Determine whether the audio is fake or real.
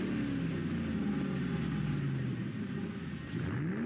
real